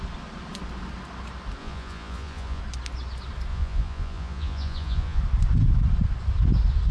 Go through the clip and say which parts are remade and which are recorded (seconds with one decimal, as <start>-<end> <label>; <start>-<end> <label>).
0.0-1.6 recorded; 1.6-2.6 remade; 2.6-3.5 recorded; 3.5-5.2 remade; 5.2-6.9 recorded